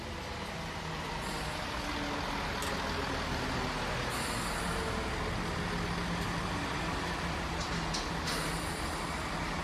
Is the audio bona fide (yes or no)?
yes